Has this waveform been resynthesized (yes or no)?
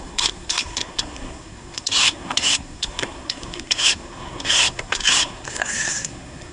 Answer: yes